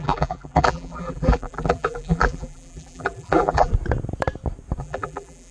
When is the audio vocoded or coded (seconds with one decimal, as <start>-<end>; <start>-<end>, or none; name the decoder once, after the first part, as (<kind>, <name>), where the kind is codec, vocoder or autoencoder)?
0.0-3.7 (vocoder, BigVGAN v2); 4.8-5.5

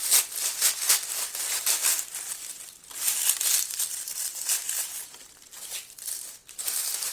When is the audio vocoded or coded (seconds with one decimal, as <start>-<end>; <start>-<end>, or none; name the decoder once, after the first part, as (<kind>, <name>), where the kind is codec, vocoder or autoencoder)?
1.8-5.5 (vocoder, BigVGAN v2)

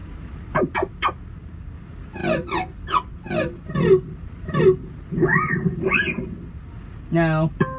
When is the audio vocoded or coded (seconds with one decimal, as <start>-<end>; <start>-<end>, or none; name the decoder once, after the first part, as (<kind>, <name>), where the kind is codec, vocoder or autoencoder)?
2.2-4.6 (vocoder, BigVGAN v2); 5.3-7.0

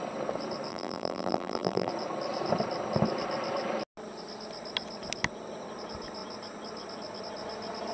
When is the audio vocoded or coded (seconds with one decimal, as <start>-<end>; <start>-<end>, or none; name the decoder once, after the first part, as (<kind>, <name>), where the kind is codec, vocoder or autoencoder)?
0.7-1.9 (vocoder, BigVGAN v2)

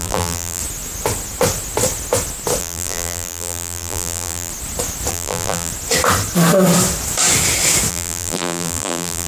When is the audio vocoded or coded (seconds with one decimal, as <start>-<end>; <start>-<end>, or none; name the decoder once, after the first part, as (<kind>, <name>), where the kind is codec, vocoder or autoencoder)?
0.0-0.6 (vocoder, BigVGAN v2); 2.6-4.5; 5.1-5.7; 7.9-9.3

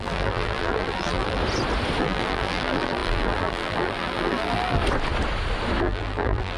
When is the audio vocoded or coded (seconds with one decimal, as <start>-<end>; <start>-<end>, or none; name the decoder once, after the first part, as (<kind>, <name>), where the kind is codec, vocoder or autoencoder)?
0.0-1.4 (vocoder, BigVGAN v2); 2.0-4.8; 5.8-6.6

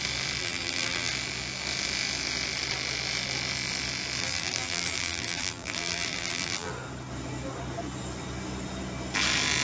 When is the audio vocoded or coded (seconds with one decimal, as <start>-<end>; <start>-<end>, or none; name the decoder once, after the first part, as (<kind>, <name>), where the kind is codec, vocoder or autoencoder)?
0.4-1.1 (vocoder, BigVGAN v2); 4.2-6.7